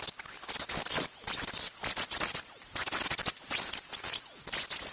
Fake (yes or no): no